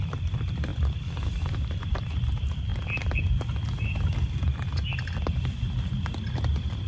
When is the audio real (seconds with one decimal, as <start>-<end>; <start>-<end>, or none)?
0.0-0.7; 2.2-6.9